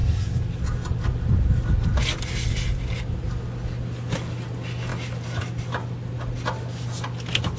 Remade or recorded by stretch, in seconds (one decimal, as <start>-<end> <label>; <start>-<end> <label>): 0.0-7.6 recorded